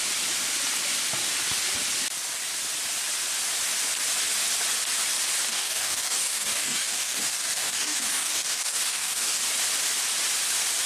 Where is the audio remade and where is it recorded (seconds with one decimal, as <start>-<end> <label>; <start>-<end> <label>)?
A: 0.0-5.5 recorded; 5.5-9.4 remade; 9.4-10.9 recorded